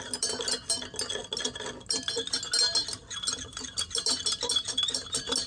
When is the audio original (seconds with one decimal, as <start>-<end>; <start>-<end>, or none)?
0.0-5.5